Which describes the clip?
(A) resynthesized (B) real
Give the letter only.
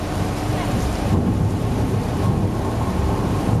A